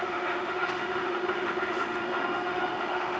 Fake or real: fake